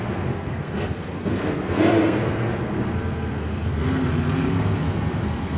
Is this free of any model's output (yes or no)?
no